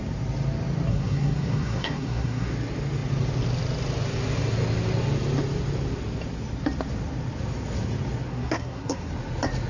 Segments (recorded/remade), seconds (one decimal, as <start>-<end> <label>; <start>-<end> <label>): 0.0-0.9 recorded; 0.9-2.5 remade; 2.5-8.3 recorded; 8.3-9.1 remade; 9.1-9.7 recorded